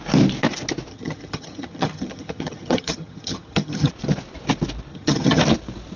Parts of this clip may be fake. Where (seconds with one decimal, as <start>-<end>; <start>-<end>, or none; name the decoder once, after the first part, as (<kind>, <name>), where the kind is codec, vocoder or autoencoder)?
0.9-3.9 (vocoder, HiFi-GAN); 4.9-5.4